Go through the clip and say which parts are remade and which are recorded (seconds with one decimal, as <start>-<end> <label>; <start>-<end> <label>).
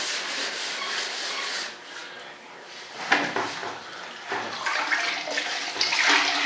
0.0-3.6 recorded; 3.6-4.5 remade; 4.5-6.5 recorded